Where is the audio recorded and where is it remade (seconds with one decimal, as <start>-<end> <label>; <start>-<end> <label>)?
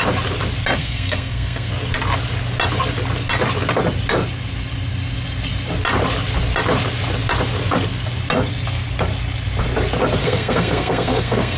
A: 0.0-0.8 recorded; 0.8-1.7 remade; 1.7-10.2 recorded; 10.2-11.6 remade